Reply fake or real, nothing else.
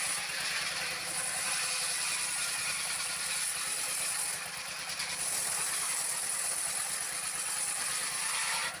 fake